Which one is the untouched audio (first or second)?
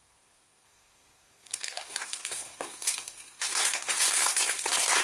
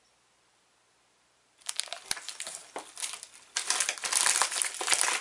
second